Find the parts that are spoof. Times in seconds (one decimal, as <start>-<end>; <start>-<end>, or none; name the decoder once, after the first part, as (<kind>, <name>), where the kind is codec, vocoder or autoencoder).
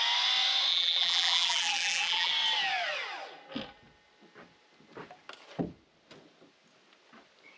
0.7-2.3 (vocoder, BigVGAN v2)